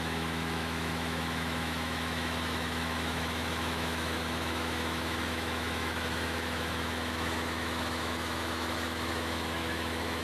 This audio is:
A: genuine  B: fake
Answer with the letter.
B